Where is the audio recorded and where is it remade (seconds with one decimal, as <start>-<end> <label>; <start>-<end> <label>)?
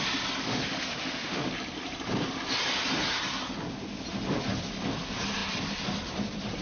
0.0-0.5 recorded; 0.5-1.5 remade; 1.5-6.6 recorded